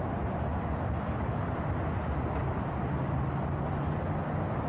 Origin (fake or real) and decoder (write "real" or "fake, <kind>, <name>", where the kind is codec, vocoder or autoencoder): real